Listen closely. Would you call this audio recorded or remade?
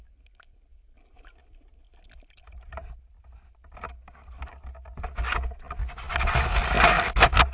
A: recorded